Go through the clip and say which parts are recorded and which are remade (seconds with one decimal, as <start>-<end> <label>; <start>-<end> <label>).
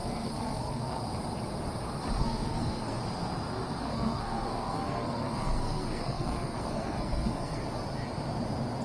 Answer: 0.0-1.0 remade; 1.0-2.2 recorded; 2.2-3.0 remade; 3.0-3.8 recorded; 3.8-7.6 remade; 7.6-8.8 recorded